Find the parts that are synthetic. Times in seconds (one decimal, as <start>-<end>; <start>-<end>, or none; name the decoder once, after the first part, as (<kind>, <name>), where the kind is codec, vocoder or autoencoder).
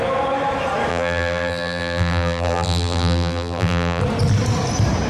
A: 0.9-4.0 (vocoder, BigVGAN v2)